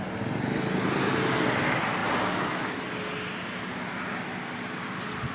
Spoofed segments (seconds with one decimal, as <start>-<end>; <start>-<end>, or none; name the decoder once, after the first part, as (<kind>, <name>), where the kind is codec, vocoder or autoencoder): none